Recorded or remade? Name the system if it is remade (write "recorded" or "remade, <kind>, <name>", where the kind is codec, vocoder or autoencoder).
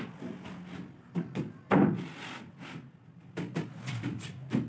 recorded